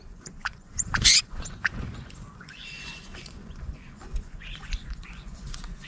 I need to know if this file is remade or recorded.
remade